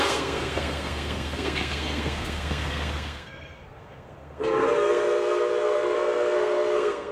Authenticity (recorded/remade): remade